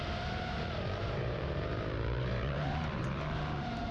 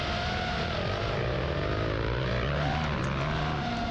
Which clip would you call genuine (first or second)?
second